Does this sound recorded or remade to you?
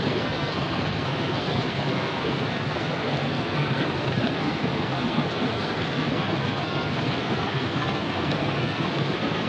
remade